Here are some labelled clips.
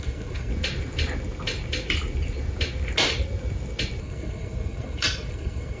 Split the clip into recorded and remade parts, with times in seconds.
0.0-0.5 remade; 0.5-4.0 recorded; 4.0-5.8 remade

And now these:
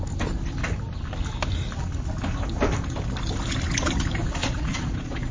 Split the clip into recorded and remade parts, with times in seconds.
0.0-4.4 recorded; 4.4-5.3 remade